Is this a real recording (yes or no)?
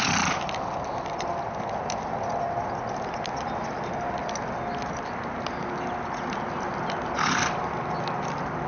yes